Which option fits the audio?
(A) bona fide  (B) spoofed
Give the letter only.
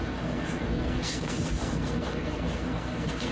B